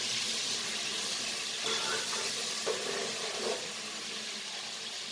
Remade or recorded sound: recorded